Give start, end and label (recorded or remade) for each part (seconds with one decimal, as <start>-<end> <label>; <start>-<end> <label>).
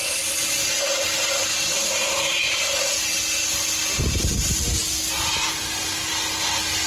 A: 0.0-6.9 recorded